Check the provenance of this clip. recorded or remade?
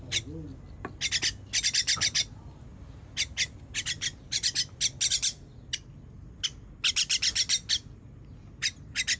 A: recorded